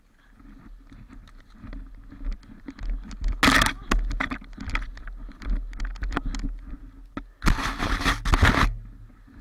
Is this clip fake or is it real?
real